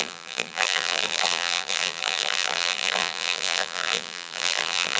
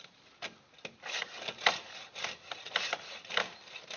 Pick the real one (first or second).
second